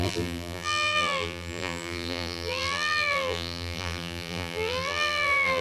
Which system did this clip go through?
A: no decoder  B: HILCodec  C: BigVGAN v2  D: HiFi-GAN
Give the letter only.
C